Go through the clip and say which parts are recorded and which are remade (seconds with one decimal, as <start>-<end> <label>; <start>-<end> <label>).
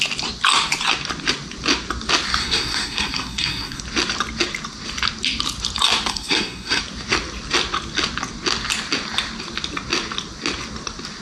0.0-2.4 recorded; 2.4-3.8 remade; 3.8-6.1 recorded; 6.1-6.8 remade; 6.8-11.2 recorded